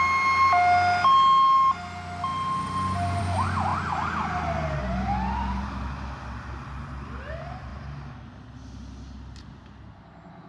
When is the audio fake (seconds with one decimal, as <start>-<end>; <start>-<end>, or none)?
none